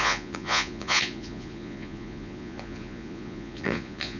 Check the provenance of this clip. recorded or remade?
remade